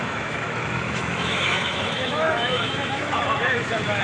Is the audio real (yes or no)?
no